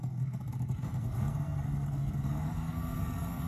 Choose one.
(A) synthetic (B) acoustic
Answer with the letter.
A